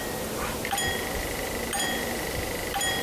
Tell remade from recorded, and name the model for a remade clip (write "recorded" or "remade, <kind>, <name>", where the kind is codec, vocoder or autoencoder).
recorded